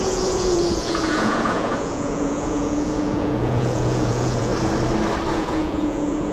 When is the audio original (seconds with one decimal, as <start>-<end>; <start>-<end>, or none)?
4.5-5.3